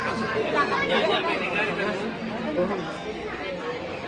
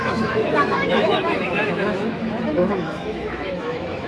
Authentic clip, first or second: first